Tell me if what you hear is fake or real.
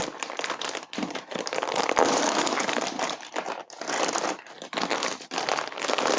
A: fake